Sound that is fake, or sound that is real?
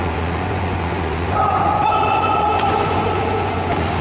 fake